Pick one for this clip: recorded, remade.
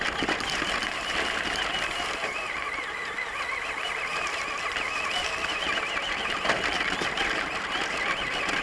recorded